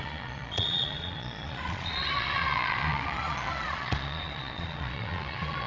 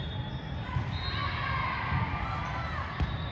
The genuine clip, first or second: second